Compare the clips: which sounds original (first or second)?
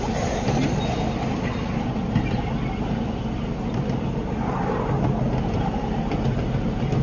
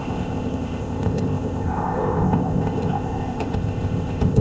first